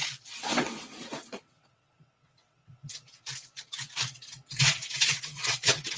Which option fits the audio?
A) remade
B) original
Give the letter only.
A